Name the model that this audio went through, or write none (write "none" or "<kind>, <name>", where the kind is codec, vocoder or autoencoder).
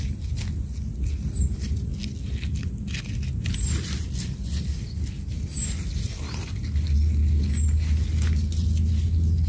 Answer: none